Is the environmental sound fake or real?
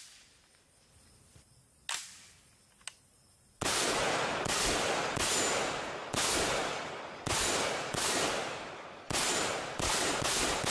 real